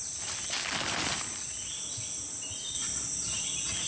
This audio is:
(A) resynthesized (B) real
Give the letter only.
B